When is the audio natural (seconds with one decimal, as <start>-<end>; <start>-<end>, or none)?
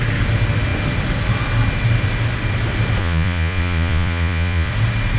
0.0-3.0; 4.7-5.2